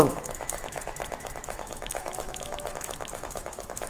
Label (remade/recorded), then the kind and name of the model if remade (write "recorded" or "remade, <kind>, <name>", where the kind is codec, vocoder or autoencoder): remade, autoencoder, DAC-VAE